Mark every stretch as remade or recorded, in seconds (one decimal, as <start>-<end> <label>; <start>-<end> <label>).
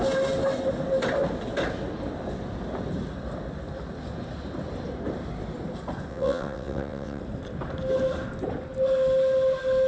0.0-6.1 recorded; 6.1-7.2 remade; 7.2-9.9 recorded